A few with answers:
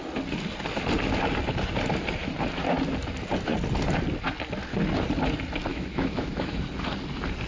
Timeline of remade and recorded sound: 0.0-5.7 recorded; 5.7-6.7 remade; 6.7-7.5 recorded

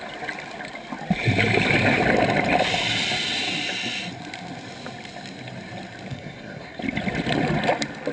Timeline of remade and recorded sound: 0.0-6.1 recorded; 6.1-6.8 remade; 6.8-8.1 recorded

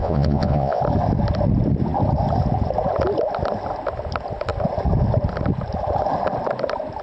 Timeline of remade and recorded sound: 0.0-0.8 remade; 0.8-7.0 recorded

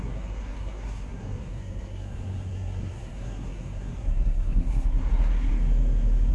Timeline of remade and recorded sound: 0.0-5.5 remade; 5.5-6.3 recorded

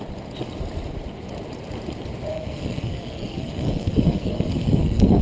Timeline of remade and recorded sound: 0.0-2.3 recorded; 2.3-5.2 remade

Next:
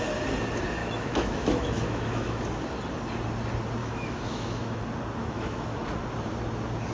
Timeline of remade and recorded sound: 0.0-0.8 recorded; 0.8-2.4 remade; 2.4-3.8 recorded; 3.8-4.8 remade; 4.8-5.2 recorded; 5.2-5.8 remade; 5.8-6.9 recorded